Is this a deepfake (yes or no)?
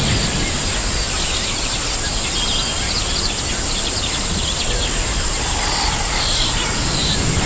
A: no